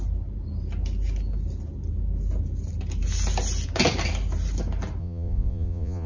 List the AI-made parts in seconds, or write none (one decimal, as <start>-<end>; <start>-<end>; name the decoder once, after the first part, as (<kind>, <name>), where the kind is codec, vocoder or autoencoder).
5.0-6.1 (vocoder, Vocos)